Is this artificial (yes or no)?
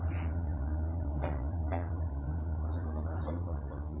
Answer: yes